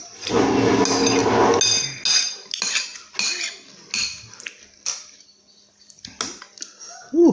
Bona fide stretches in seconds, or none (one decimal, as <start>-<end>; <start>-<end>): 0.0-7.3